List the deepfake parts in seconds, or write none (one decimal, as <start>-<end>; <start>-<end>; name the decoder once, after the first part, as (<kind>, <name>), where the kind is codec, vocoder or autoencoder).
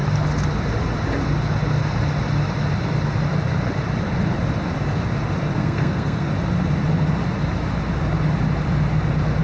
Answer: 5.6-6.3 (codec, SNAC)